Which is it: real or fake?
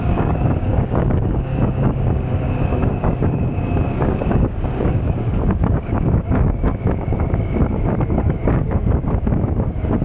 fake